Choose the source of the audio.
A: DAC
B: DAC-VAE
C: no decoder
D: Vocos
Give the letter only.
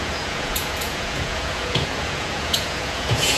D